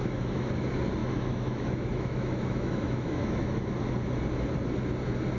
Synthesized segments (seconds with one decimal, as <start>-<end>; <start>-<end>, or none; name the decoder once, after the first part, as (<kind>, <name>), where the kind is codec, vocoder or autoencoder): 0.0-0.5 (autoencoder, DAC-VAE); 1.0-3.7